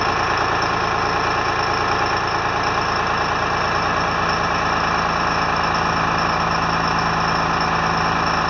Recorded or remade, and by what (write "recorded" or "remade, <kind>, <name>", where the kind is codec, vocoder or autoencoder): recorded